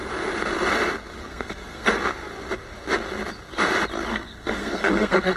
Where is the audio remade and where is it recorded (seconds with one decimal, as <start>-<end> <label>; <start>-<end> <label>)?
0.0-1.3 recorded; 1.3-2.0 remade; 2.0-4.1 recorded; 4.1-5.4 remade